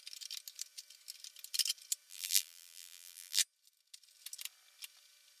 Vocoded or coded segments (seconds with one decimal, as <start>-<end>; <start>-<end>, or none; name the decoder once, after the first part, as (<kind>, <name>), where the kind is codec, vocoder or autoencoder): 2.1-3.4 (vocoder, BigVGAN v2)